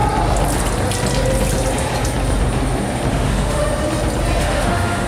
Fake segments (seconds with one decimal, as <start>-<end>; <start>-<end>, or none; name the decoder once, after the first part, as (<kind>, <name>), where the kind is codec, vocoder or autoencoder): 3.1-3.6 (autoencoder, DAC-VAE); 4.4-5.1